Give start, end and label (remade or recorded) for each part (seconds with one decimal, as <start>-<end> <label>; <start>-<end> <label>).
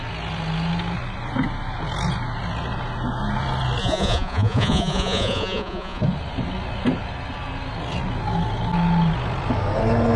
0.0-3.8 recorded; 3.8-6.0 remade; 6.0-10.2 recorded